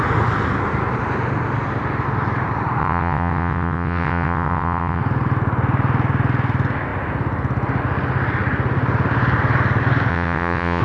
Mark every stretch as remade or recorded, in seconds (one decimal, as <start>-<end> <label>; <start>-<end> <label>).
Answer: 0.0-2.8 recorded; 2.8-5.0 remade; 5.0-10.1 recorded; 10.1-10.8 remade